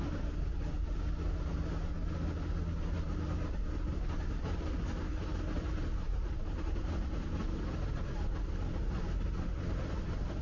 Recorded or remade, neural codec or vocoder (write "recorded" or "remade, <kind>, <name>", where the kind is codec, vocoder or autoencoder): recorded